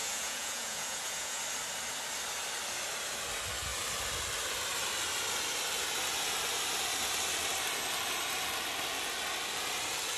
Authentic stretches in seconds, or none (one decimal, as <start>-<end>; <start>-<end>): 1.4-10.2